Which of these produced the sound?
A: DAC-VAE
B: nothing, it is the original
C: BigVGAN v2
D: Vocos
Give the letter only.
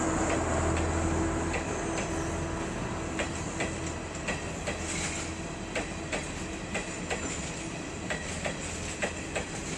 B